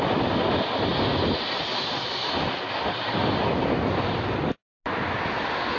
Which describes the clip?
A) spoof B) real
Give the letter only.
B